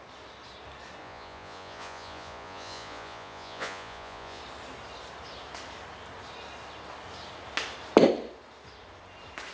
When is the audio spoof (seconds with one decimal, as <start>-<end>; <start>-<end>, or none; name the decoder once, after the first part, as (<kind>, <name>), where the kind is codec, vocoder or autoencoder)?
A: 1.0-4.4 (vocoder, Vocos)